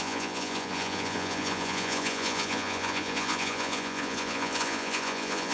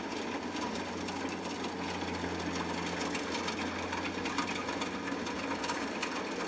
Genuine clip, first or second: second